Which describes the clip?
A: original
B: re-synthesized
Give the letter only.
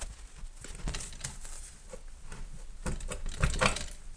A